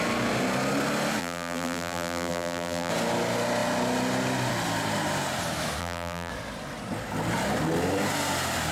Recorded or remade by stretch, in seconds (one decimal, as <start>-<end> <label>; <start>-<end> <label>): 0.0-1.2 recorded; 1.2-2.9 remade; 2.9-5.8 recorded; 5.8-6.3 remade; 6.3-8.7 recorded